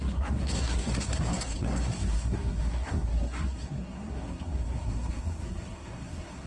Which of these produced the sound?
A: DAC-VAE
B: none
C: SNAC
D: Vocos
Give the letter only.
C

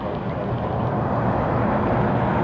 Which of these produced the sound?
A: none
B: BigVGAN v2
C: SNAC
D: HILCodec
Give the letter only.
A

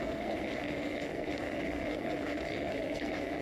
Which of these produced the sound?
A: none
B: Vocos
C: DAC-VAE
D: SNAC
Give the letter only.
D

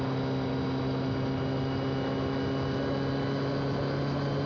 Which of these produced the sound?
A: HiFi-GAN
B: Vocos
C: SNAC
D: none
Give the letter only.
D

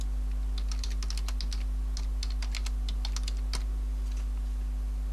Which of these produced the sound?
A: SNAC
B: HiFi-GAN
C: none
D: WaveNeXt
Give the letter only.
C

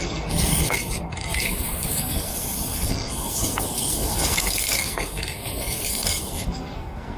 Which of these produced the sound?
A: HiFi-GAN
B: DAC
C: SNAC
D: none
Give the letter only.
C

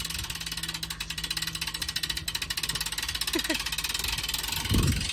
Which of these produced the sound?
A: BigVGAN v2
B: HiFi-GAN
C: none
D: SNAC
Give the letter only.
C